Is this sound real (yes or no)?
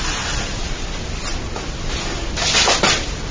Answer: yes